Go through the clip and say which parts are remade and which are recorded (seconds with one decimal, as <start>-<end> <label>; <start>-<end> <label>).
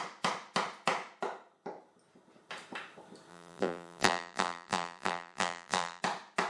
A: 0.0-3.3 recorded; 3.3-6.0 remade; 6.0-6.5 recorded